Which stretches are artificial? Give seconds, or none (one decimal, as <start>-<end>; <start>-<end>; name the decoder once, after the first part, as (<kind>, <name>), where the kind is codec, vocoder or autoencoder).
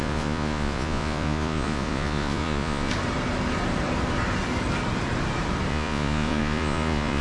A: 0.0-2.9 (vocoder, Vocos); 5.7-7.2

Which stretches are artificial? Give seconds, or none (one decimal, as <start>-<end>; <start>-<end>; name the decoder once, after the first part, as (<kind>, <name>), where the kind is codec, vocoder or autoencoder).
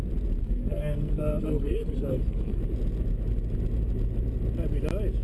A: 0.4-2.6 (codec, SNAC)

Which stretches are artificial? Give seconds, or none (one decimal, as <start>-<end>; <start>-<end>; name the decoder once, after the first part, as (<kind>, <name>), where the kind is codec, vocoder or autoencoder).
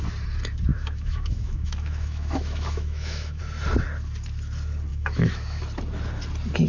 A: 0.7-3.4 (autoencoder, DAC-VAE); 4.9-5.6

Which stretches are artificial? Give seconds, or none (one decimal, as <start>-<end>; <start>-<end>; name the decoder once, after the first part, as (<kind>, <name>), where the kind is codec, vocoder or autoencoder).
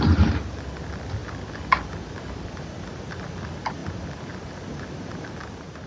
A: none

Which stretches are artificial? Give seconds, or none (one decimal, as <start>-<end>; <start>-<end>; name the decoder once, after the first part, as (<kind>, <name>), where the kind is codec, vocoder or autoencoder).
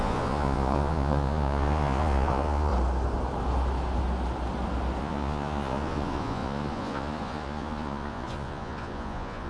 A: 0.0-2.7 (vocoder, Vocos); 5.0-9.5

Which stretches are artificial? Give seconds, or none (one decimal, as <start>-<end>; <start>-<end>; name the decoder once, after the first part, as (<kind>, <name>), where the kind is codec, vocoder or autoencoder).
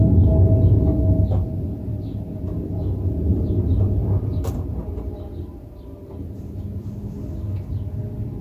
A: 3.3-6.8 (vocoder, BigVGAN v2)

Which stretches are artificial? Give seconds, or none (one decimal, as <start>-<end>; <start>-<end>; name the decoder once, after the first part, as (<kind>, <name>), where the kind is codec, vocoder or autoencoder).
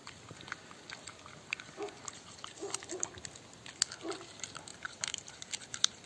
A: 4.7-6.1 (vocoder, BigVGAN v2)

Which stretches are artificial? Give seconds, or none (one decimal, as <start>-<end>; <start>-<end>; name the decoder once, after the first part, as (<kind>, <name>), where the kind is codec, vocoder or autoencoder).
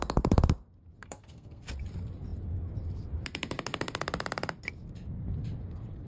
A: 1.0-1.6 (codec, SNAC)